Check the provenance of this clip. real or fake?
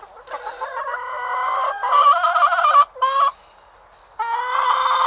real